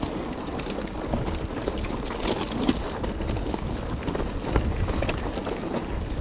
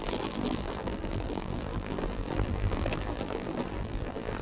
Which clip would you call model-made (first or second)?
second